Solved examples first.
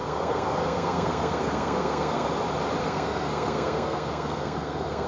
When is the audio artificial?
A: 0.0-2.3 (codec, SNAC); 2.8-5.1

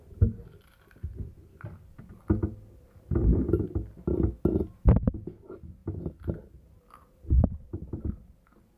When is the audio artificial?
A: none

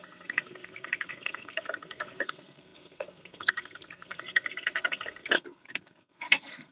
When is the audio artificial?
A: 0.0-6.7 (codec, SNAC)

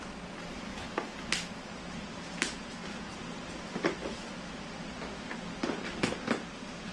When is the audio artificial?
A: none

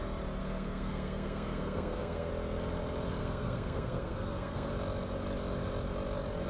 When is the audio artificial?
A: 0.4-2.3 (codec, SNAC); 3.2-4.7

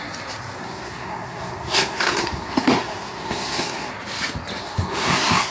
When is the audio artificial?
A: 0.6-3.9 (codec, SNAC); 4.6-5.5

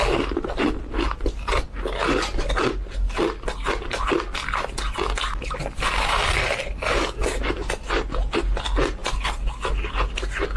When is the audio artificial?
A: none

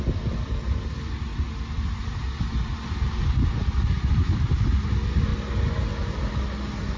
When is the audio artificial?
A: none